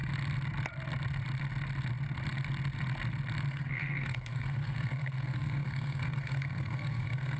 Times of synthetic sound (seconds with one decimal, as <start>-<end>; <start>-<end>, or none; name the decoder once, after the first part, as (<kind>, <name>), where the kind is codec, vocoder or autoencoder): 3.5-7.4 (codec, SNAC)

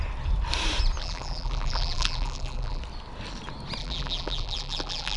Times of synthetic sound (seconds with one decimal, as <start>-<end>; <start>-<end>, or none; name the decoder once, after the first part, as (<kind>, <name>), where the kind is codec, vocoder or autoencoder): 1.0-2.8 (vocoder, BigVGAN v2); 3.8-5.2

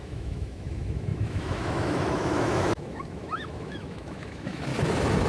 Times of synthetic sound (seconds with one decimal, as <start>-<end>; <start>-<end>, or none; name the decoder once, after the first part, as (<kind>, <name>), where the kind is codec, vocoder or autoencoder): 0.0-4.7 (autoencoder, DAC-VAE)

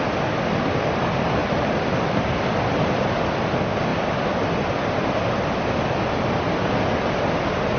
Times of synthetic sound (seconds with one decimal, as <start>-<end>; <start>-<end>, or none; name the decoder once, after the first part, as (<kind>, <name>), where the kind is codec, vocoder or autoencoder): none

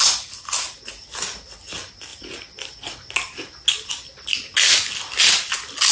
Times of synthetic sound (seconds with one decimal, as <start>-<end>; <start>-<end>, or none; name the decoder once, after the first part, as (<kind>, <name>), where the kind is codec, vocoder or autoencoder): none

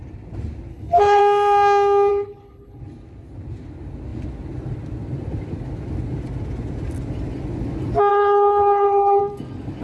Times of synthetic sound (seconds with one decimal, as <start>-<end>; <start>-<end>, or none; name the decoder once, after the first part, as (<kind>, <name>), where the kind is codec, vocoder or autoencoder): 0.7-1.2 (codec, HILCodec); 2.1-2.8; 8.1-9.2

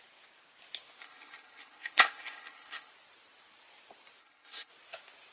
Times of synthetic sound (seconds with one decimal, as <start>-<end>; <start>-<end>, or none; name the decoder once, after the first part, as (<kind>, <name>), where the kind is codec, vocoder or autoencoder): 1.0-2.9 (codec, HILCodec); 4.2-4.7

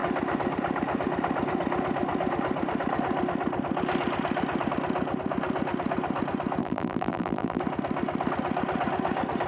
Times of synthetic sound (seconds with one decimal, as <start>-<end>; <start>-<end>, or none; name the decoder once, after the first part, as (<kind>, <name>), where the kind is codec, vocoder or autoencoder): 6.6-7.6 (vocoder, BigVGAN v2)